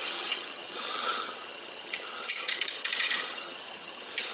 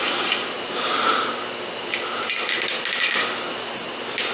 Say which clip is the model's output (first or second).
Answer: first